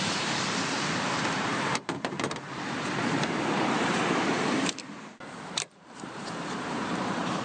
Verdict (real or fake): fake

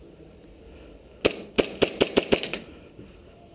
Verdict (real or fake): real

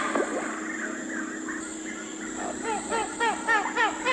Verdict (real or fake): real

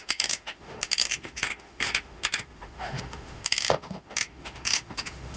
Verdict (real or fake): fake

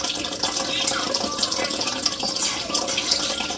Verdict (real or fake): real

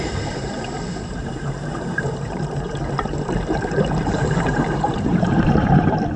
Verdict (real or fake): fake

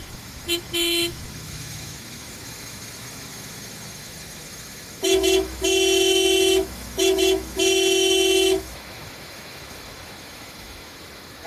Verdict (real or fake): fake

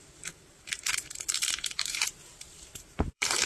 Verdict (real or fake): fake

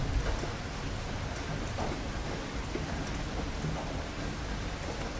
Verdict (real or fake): real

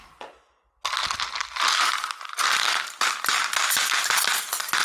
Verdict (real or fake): real